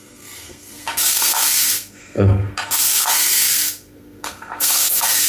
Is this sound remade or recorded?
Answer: remade